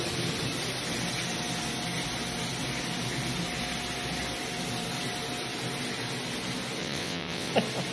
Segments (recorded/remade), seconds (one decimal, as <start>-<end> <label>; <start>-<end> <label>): 0.0-6.8 recorded; 6.8-7.5 remade; 7.5-7.9 recorded